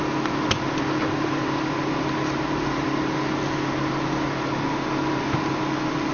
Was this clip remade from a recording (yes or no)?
no